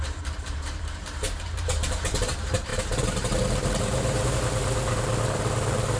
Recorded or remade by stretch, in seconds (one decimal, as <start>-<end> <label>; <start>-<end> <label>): 0.0-6.0 remade